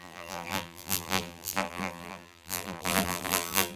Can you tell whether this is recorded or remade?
remade